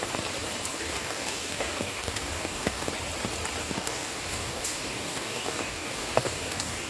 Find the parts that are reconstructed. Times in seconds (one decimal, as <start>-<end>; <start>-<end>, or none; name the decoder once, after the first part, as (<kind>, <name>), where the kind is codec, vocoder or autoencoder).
0.7-2.9 (codec, DAC); 3.6-6.9